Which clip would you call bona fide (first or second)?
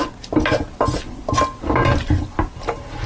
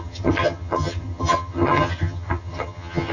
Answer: first